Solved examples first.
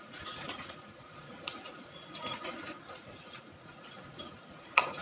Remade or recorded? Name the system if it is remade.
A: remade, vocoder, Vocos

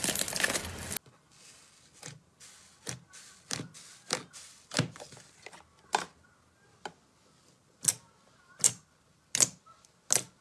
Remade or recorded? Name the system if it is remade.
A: recorded